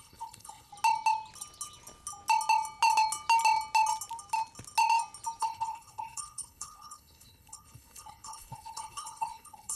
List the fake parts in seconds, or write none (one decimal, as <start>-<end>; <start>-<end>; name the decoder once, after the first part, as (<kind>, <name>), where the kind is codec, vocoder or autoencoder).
0.0-0.7 (codec, HILCodec); 5.4-9.8